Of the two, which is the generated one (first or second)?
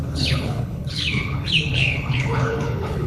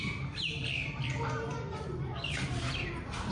first